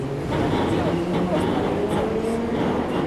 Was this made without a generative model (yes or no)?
yes